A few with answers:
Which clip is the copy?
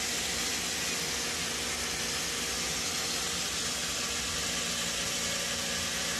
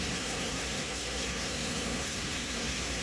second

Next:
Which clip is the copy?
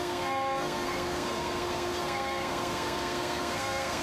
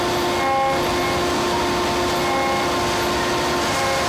first